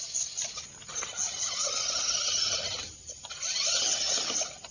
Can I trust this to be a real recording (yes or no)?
yes